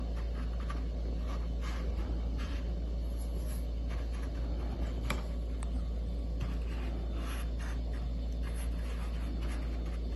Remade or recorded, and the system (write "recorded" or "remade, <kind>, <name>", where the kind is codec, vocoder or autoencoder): recorded